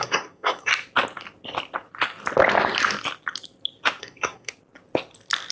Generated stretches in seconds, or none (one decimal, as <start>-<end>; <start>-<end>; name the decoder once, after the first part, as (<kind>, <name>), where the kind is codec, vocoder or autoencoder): 0.0-0.7 (codec, SNAC); 4.0-4.5